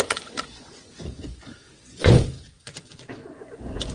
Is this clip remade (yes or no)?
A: yes